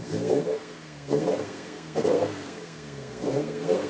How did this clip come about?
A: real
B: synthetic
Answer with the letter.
B